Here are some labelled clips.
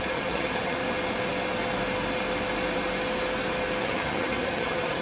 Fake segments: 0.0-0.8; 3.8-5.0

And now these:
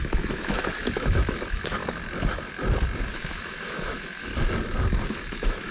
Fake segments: 0.0-1.8; 3.1-4.3; 5.1-5.7